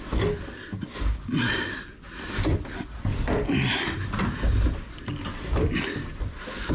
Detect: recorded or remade recorded